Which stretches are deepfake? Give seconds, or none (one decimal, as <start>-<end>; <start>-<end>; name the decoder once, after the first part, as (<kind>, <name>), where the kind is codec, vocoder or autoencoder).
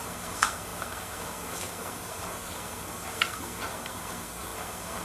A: 0.0-5.0 (codec, SNAC)